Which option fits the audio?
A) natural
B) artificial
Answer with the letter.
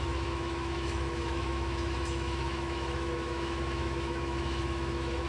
B